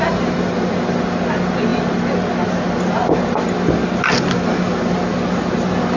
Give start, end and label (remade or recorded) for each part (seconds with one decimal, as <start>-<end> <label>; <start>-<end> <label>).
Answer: 0.0-6.0 recorded